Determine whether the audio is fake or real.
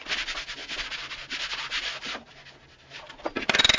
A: real